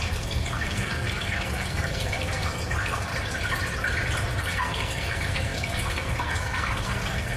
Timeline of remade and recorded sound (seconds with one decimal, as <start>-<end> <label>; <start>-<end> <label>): 0.0-3.1 remade; 3.1-4.4 recorded; 4.4-7.4 remade